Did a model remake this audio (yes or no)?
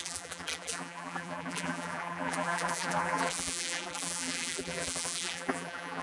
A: yes